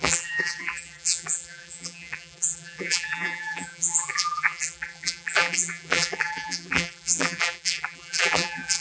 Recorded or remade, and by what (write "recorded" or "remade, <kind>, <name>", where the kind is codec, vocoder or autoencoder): remade, vocoder, BigVGAN v2